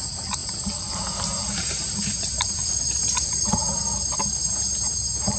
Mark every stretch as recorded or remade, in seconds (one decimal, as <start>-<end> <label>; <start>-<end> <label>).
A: 0.0-2.6 remade; 2.6-4.4 recorded; 4.4-5.4 remade